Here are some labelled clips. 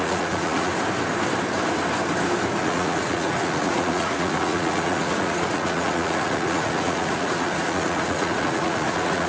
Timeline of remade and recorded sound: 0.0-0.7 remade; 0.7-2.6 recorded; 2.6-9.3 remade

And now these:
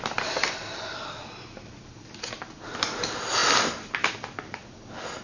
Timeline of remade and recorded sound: 0.0-5.2 recorded

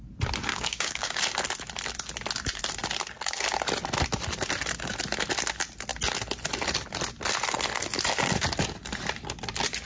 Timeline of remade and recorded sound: 0.0-0.5 recorded; 0.5-1.2 remade; 1.2-9.8 recorded

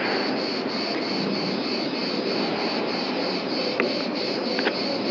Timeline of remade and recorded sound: 0.0-3.6 recorded; 3.6-4.4 remade; 4.4-5.1 recorded

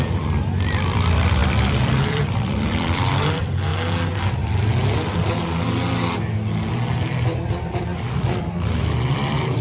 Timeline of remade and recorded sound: 0.0-3.7 remade; 3.7-7.1 recorded; 7.1-9.6 remade

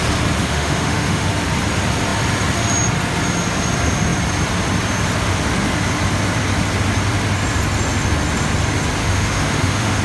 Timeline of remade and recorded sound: 0.0-0.4 recorded; 0.4-1.3 remade; 1.3-9.0 recorded; 9.0-10.0 remade

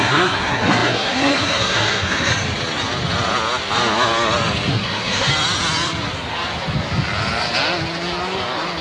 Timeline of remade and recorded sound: 0.0-2.3 remade; 2.3-4.7 recorded; 4.7-5.3 remade; 5.3-8.8 recorded